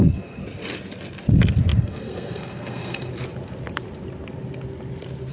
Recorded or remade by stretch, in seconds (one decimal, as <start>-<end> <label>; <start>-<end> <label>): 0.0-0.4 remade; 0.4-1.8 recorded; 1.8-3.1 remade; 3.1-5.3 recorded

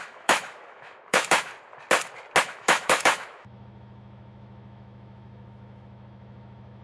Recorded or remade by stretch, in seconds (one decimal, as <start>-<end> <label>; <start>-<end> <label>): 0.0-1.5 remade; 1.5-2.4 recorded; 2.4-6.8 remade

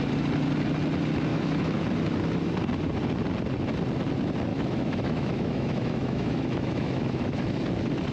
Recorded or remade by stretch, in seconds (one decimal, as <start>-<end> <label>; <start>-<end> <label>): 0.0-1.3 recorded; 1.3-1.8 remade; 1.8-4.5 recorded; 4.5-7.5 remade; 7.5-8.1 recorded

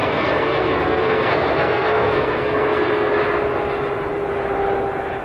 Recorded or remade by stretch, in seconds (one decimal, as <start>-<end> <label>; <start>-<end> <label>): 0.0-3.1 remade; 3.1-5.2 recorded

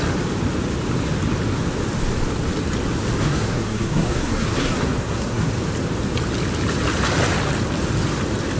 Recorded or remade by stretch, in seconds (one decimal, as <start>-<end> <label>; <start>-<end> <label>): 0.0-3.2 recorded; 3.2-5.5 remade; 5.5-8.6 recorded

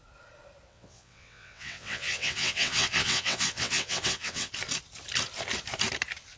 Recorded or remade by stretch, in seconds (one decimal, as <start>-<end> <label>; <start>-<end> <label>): 0.0-0.7 recorded; 0.7-4.5 remade; 4.5-6.4 recorded

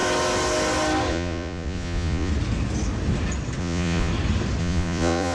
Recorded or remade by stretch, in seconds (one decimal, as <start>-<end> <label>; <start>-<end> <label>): 0.0-1.1 recorded; 1.1-2.3 remade; 2.3-3.6 recorded; 3.6-4.1 remade; 4.1-4.6 recorded; 4.6-5.3 remade